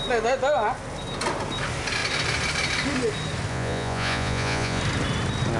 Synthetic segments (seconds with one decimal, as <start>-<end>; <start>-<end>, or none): 3.5-4.8